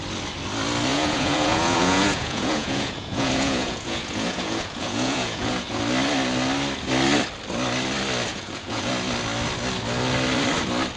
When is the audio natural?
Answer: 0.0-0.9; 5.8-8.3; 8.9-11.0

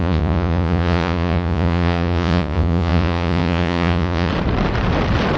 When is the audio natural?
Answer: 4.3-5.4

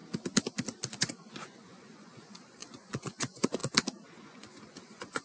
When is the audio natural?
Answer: 0.0-1.0; 3.6-4.2

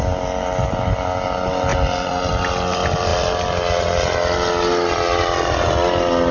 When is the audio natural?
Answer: 0.0-6.3

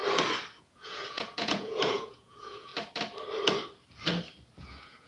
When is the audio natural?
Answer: 0.0-0.6; 2.7-4.6

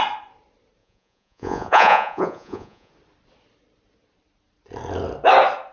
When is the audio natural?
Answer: 0.0-0.8; 2.9-5.7

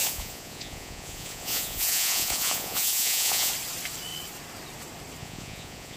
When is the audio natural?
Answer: 3.5-5.2